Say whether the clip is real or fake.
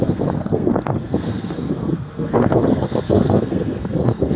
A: fake